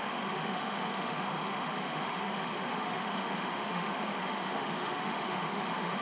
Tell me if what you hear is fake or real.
fake